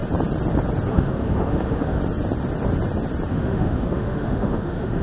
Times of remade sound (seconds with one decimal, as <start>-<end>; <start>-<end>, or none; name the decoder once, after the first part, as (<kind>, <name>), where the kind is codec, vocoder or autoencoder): 0.9-2.0 (autoencoder, DAC-VAE); 3.3-5.0

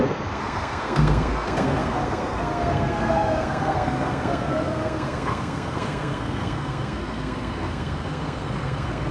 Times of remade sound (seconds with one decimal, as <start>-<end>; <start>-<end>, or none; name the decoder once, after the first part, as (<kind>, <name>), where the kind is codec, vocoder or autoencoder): 0.0-9.1 (codec, SNAC)

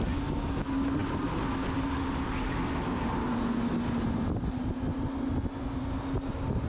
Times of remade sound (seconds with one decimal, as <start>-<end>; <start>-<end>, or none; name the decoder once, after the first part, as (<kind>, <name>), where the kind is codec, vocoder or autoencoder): none